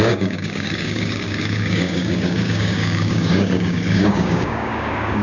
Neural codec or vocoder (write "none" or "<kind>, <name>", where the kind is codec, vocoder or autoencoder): codec, DAC